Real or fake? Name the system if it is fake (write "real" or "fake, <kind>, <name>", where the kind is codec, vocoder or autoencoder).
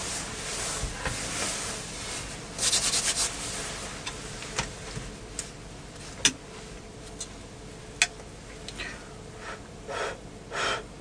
real